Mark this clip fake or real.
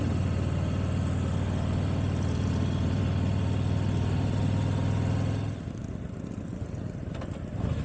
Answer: real